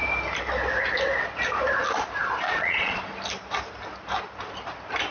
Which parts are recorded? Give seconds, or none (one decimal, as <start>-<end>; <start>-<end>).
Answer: 0.0-2.2; 3.0-5.1